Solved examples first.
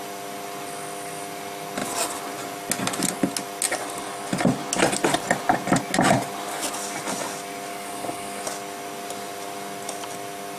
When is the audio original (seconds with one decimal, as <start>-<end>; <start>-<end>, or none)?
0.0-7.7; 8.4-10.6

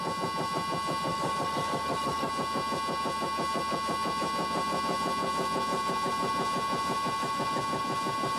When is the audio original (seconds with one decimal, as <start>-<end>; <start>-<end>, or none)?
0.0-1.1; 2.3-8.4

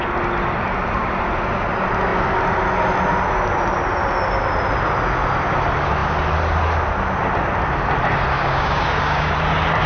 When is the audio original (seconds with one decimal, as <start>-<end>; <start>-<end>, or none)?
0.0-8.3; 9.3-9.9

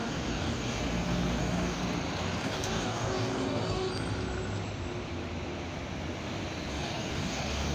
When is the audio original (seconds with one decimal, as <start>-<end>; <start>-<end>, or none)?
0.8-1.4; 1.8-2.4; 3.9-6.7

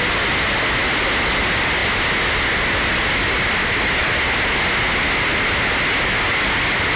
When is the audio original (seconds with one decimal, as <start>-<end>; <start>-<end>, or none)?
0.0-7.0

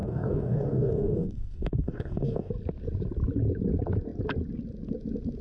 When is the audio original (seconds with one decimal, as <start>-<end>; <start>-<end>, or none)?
2.5-5.4